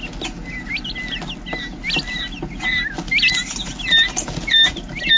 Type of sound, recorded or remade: recorded